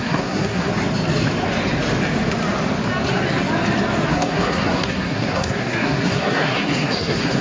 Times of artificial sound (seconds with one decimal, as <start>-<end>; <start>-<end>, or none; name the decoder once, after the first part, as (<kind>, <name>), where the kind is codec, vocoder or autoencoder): 0.0-0.7 (codec, SNAC); 4.1-7.4